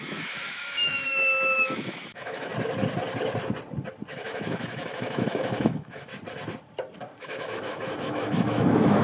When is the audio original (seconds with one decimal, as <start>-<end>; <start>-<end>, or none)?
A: 2.5-4.1; 6.1-7.2

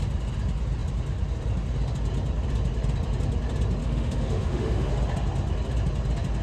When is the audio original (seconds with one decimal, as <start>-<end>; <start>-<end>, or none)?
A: 0.0-3.8; 4.9-6.4